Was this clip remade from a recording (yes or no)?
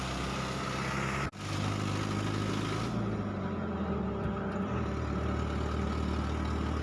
no